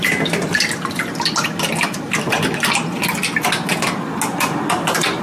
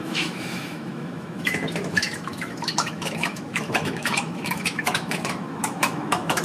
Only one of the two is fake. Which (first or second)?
second